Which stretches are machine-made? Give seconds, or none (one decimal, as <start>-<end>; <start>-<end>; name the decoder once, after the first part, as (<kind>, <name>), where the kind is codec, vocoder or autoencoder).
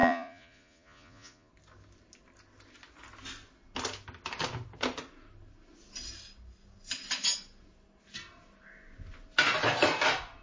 0.0-1.5 (vocoder, Vocos)